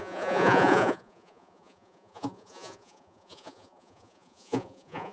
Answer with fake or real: fake